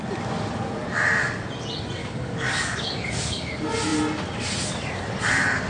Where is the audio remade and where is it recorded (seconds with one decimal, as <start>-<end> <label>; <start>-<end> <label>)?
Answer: 0.0-2.0 recorded; 2.0-3.5 remade; 3.5-5.7 recorded